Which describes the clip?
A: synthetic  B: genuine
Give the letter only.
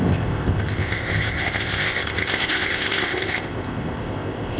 A